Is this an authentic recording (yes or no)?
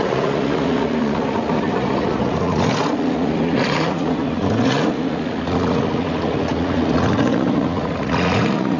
no